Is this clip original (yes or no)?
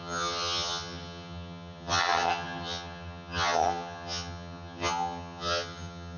no